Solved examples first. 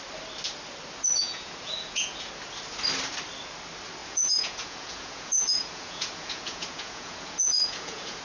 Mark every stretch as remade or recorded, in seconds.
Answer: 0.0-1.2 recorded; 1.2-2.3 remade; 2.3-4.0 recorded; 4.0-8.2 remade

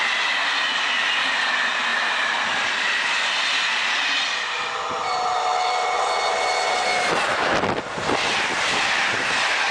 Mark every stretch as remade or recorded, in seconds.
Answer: 0.0-9.7 recorded

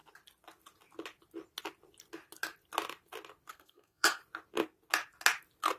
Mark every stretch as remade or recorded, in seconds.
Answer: 0.0-3.5 recorded; 3.5-4.2 remade; 4.2-5.8 recorded

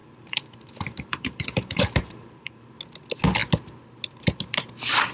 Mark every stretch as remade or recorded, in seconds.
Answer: 0.0-2.7 remade; 2.7-5.1 recorded

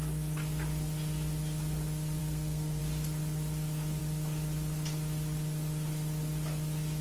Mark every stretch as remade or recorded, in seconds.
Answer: 0.0-2.2 recorded; 2.2-2.8 remade; 2.8-7.0 recorded

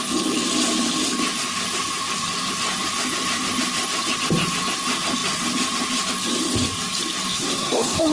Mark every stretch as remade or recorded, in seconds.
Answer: 0.0-7.3 recorded; 7.3-8.1 remade